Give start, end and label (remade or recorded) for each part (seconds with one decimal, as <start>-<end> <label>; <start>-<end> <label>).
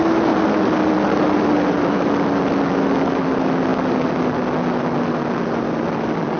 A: 0.0-6.4 recorded